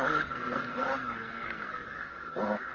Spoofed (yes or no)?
yes